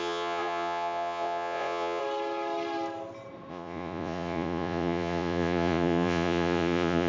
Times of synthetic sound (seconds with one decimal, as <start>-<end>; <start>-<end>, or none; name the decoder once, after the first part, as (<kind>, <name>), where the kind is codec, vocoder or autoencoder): 0.0-2.0 (vocoder, Vocos); 3.5-7.1